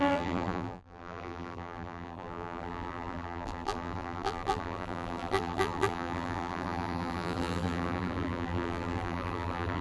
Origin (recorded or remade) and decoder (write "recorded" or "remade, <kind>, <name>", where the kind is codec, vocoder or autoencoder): remade, vocoder, BigVGAN v2